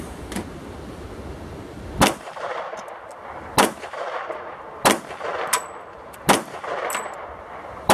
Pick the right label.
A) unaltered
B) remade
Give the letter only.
A